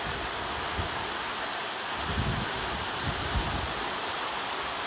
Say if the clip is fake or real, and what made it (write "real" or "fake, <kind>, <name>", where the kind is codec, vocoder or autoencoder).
real